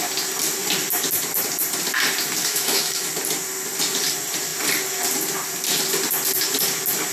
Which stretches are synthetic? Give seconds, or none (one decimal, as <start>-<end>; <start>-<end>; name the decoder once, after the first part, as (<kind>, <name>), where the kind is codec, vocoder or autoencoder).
2.4-3.1 (autoencoder, DAC-VAE)